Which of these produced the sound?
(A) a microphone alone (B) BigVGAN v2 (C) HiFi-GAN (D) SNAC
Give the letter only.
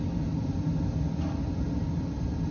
A